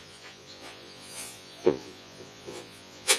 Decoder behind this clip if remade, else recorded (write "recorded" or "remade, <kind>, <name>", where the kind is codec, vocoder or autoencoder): remade, vocoder, Vocos